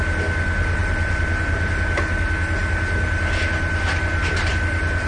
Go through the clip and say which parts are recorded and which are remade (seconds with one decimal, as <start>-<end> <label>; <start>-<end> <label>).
0.0-5.1 recorded